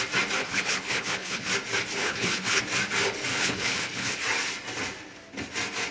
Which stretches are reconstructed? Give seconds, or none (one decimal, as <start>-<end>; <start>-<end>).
0.4-1.5; 1.9-2.6; 3.3-4.2